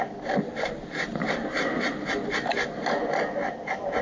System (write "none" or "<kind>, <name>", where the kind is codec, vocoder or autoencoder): none